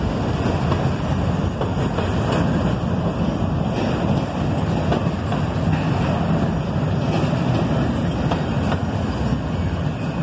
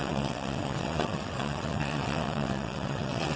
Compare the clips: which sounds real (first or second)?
first